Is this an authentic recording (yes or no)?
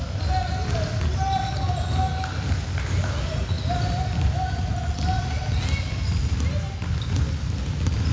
yes